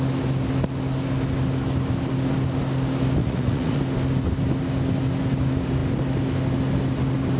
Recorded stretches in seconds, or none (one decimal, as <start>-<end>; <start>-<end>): 0.0-3.2; 3.8-7.4